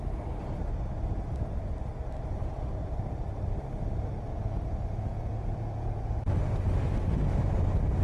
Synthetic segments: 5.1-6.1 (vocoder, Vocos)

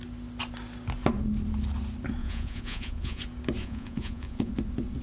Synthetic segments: 2.2-3.2 (vocoder, Vocos); 3.6-4.5

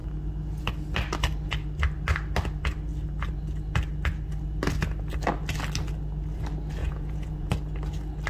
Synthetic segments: 6.8-7.5 (vocoder, Vocos)